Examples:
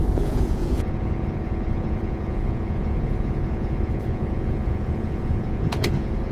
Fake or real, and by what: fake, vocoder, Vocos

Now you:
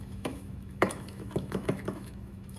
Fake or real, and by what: fake, autoencoder, DAC-VAE